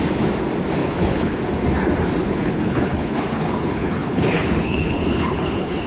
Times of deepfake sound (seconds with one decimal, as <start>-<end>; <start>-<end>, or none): 0.8-1.4; 2.2-5.9